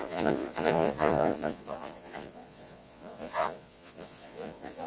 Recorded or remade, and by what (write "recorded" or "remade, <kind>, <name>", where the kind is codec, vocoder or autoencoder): remade, vocoder, Vocos